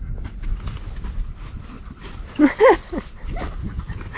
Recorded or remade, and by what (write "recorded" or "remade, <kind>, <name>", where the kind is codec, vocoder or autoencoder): recorded